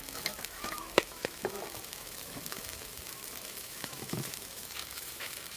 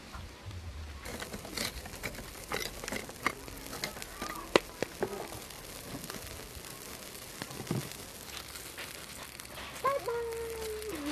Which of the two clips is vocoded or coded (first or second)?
first